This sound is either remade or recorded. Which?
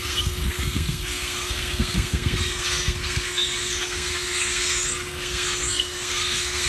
remade